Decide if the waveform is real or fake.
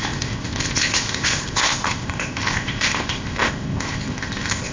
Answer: fake